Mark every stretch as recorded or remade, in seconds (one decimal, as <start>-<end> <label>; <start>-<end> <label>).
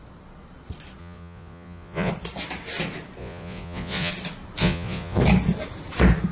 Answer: 0.0-1.0 recorded; 1.0-2.1 remade; 2.1-3.2 recorded; 3.2-4.1 remade; 4.1-4.6 recorded; 4.6-5.2 remade; 5.2-6.3 recorded